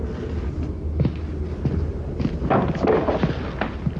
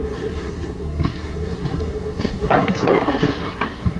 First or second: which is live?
first